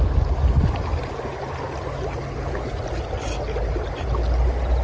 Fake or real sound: real